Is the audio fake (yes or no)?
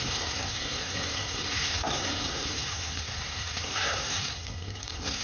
yes